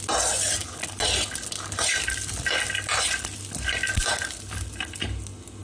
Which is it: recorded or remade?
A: recorded